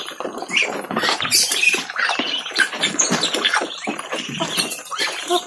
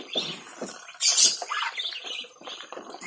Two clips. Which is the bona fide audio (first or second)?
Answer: second